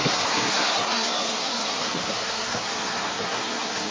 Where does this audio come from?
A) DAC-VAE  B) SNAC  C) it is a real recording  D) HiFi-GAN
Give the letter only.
B